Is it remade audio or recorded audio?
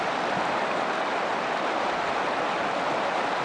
recorded